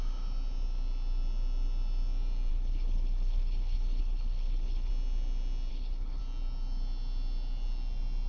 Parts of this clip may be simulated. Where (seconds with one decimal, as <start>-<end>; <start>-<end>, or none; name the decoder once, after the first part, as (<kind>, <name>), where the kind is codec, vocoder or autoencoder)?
2.5-4.9 (codec, HILCodec); 5.7-6.2